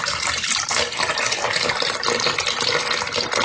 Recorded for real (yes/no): yes